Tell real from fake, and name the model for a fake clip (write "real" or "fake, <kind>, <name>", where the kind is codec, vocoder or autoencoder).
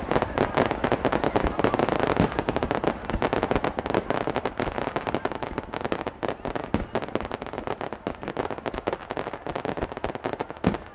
real